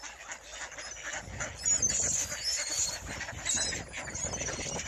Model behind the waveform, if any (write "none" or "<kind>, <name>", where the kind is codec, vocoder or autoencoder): vocoder, BigVGAN v2